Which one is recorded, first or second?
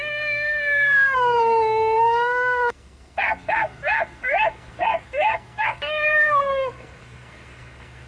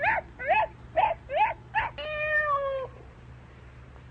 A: second